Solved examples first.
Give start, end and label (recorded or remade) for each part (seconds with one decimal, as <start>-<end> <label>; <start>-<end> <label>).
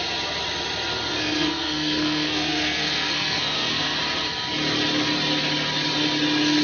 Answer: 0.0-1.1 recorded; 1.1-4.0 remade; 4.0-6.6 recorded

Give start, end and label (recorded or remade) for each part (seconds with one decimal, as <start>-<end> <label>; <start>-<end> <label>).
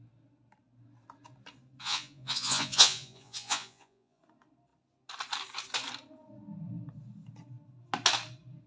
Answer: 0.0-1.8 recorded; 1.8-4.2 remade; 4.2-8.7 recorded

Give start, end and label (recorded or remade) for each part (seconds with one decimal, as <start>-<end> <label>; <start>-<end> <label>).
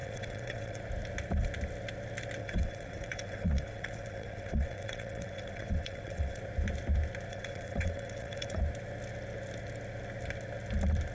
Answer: 0.0-0.8 remade; 0.8-2.4 recorded; 2.4-6.4 remade; 6.4-7.3 recorded; 7.3-8.6 remade; 8.6-11.1 recorded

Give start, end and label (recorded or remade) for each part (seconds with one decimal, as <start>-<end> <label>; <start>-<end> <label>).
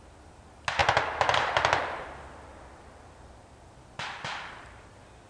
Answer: 0.0-5.3 recorded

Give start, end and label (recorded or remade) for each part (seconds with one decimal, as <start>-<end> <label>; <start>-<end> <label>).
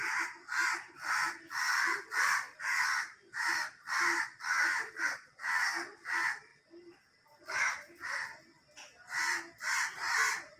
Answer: 0.0-10.6 recorded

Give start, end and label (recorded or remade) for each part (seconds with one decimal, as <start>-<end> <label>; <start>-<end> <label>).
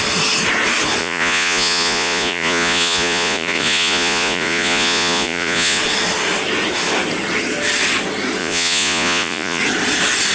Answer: 0.0-1.0 recorded; 1.0-5.8 remade; 5.8-8.4 recorded; 8.4-9.6 remade; 9.6-10.3 recorded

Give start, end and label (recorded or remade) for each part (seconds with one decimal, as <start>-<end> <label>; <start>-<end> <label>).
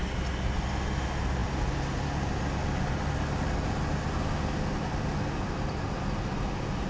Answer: 0.0-6.9 recorded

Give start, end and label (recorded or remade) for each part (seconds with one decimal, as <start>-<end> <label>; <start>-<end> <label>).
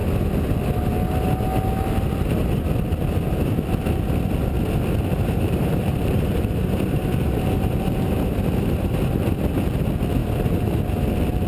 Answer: 0.0-5.1 recorded; 5.1-9.3 remade; 9.3-10.2 recorded; 10.2-10.8 remade; 10.8-11.5 recorded